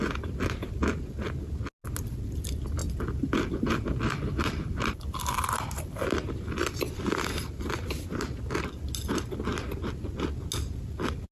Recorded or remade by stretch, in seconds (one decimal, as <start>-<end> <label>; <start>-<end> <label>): 0.0-2.8 recorded; 2.8-7.5 remade; 7.5-11.3 recorded